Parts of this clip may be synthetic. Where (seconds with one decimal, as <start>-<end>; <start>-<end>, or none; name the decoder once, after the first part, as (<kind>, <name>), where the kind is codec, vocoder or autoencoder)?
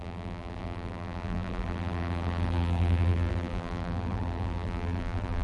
0.0-5.4 (vocoder, BigVGAN v2)